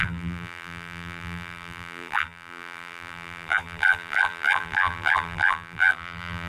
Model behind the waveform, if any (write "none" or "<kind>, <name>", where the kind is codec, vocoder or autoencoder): vocoder, BigVGAN v2